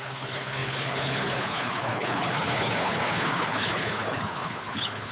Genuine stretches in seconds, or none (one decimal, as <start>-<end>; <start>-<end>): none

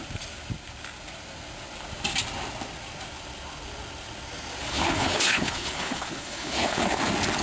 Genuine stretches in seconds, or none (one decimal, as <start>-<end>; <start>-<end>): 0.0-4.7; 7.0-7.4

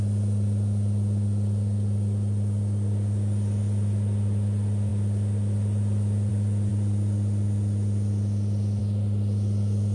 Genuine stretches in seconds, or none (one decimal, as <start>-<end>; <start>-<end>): 0.0-9.9

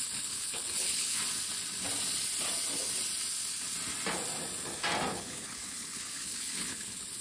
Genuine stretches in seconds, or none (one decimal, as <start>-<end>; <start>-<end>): 1.2-5.1